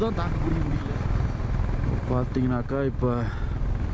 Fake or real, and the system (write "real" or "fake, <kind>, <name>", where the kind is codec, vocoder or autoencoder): real